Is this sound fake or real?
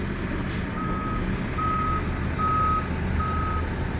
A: real